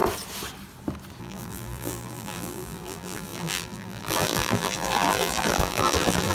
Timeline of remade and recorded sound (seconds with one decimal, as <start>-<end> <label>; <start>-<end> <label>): 0.0-1.2 recorded; 1.2-6.3 remade